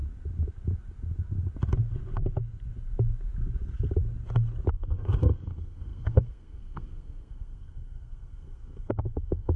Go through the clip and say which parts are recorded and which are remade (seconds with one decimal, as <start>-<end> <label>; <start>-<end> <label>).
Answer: 0.0-4.7 recorded; 4.7-9.6 remade